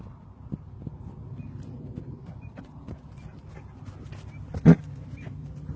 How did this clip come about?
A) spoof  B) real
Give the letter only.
B